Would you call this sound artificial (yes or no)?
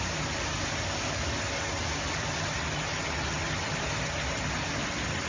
no